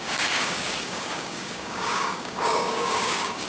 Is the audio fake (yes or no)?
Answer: yes